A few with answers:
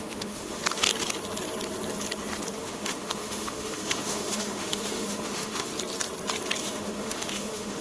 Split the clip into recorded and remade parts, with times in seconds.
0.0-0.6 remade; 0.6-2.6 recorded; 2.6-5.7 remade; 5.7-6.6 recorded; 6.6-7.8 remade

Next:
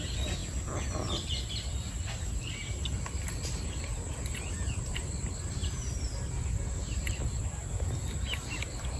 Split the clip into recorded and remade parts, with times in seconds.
0.0-9.0 recorded

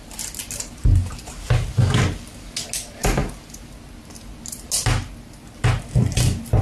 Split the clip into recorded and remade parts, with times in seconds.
0.0-6.6 recorded

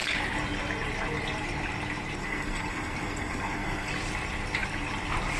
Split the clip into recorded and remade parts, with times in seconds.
0.0-2.2 recorded; 2.2-3.9 remade; 3.9-5.4 recorded

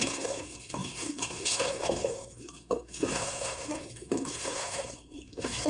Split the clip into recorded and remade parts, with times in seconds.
0.0-5.7 remade

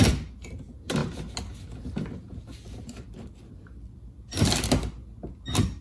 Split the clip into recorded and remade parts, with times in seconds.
0.0-5.8 recorded

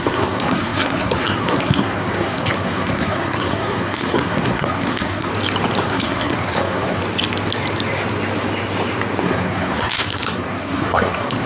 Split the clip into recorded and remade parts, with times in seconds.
0.0-5.3 remade; 5.3-5.8 recorded; 5.8-7.0 remade; 7.0-9.2 recorded; 9.2-11.5 remade